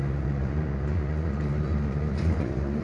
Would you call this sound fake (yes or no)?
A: yes